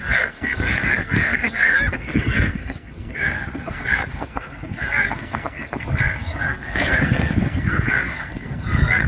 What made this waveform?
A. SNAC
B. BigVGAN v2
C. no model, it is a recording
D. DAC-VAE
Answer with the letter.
A